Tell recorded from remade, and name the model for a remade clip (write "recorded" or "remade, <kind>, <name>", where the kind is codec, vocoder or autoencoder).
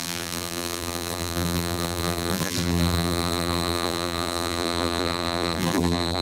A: remade, vocoder, BigVGAN v2